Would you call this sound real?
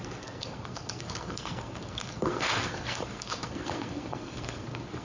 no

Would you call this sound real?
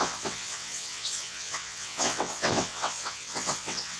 no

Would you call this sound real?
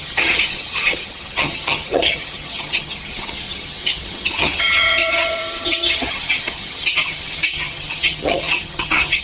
no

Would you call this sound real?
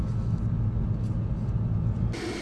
yes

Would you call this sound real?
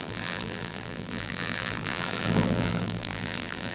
no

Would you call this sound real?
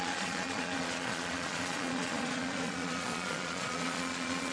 no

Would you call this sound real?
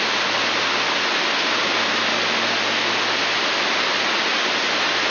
yes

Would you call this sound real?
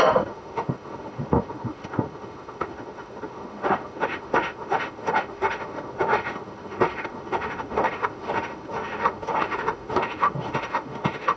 no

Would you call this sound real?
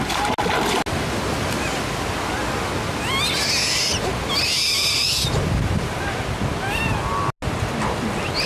yes